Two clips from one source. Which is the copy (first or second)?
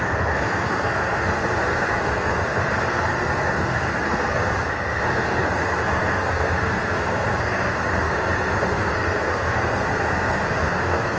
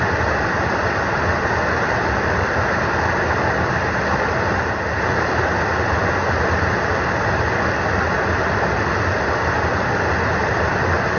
first